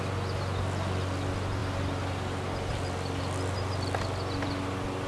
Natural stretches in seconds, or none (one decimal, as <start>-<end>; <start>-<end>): 0.0-5.1